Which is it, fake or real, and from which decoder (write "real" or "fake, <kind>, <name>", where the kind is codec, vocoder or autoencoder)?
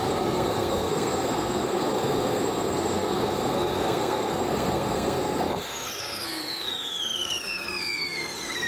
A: fake, codec, SNAC